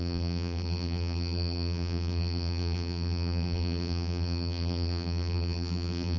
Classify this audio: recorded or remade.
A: remade